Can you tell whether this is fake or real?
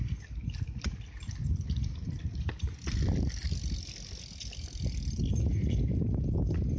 real